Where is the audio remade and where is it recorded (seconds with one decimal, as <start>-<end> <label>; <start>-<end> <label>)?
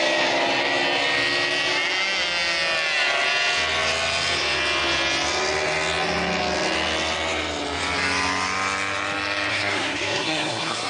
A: 0.0-9.5 recorded; 9.5-10.9 remade